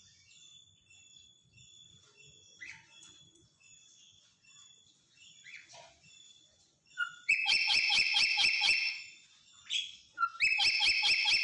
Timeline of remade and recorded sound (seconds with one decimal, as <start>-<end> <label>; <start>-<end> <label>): 0.0-10.3 remade; 10.3-11.4 recorded